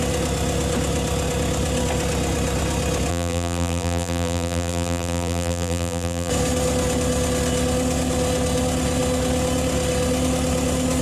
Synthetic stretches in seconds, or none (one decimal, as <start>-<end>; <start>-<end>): 3.1-6.3